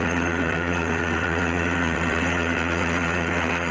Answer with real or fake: fake